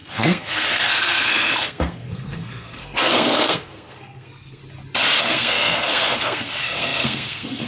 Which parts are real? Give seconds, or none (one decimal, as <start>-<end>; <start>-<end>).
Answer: 4.6-5.2